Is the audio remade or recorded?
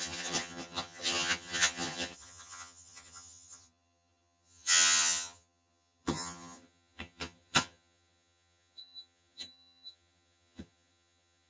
remade